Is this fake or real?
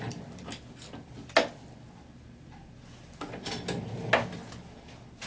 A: real